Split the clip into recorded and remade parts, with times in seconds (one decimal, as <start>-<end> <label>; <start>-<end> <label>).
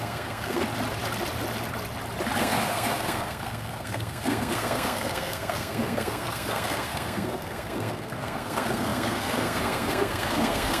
0.0-0.6 remade; 0.6-2.4 recorded; 2.4-10.8 remade